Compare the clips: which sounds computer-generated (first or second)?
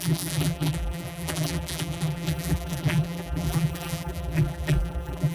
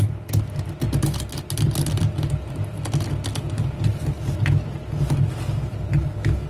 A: first